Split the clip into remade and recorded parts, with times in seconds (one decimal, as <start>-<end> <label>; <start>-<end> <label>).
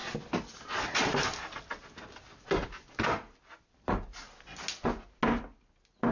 0.0-6.1 recorded